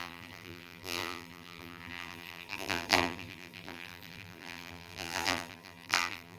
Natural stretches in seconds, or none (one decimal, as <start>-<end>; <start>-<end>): none